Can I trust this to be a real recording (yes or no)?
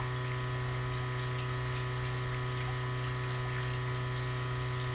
yes